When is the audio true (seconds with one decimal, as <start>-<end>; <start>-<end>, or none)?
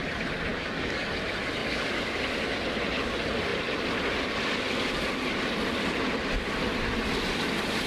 0.0-0.5; 1.1-1.6; 2.2-7.9